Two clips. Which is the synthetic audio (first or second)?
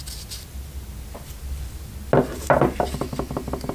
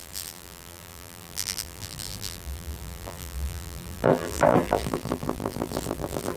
second